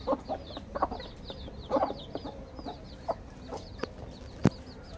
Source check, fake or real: real